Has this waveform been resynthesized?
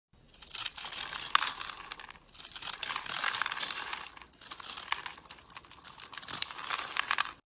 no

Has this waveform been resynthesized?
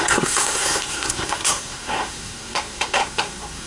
yes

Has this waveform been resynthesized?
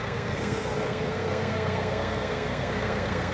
yes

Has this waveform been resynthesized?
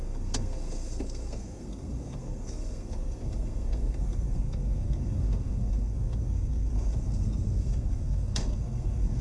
yes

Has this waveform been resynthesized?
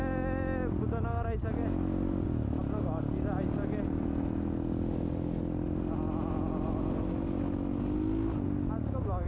no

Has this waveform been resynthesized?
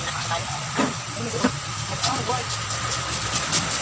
no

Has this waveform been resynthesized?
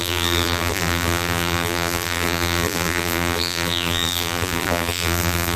yes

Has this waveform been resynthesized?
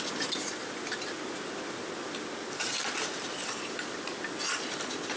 no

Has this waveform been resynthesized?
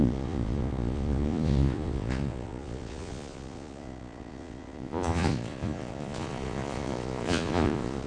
yes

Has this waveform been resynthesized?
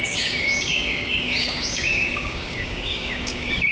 yes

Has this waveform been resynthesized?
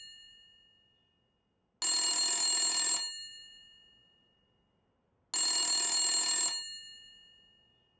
no